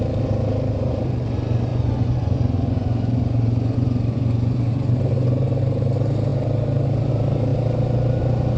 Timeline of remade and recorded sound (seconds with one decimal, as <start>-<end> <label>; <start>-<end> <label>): 0.0-1.7 recorded; 1.7-4.7 remade; 4.7-8.6 recorded